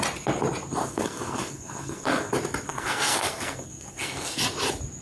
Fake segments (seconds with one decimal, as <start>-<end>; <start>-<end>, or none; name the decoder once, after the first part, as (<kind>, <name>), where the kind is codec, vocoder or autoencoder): 0.8-2.3 (codec, SNAC); 2.7-4.4